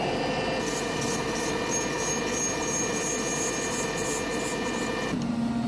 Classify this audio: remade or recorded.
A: recorded